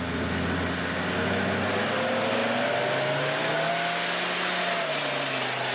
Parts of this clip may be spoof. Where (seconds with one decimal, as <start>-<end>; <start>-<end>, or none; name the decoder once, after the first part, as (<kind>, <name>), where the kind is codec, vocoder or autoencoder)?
none